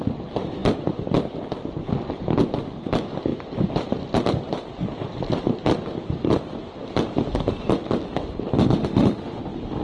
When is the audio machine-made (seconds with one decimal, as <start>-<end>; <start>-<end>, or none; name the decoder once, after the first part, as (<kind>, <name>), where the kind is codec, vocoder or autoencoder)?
8.8-9.4 (autoencoder, DAC-VAE)